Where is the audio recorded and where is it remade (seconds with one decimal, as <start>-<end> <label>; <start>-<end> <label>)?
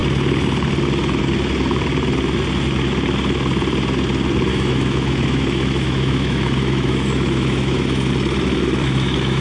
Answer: 0.0-4.5 recorded; 4.5-8.1 remade; 8.1-8.8 recorded; 8.8-9.4 remade